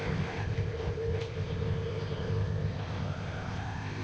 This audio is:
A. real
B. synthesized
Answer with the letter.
B